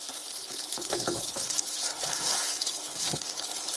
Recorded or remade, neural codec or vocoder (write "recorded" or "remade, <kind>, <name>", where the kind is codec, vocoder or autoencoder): remade, codec, HILCodec